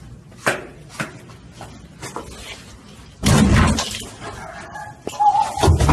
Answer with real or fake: real